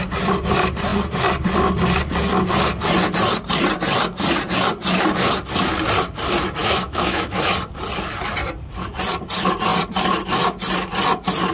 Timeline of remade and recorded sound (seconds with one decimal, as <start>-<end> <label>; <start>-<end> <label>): 0.0-6.6 recorded; 6.6-7.5 remade; 7.5-11.5 recorded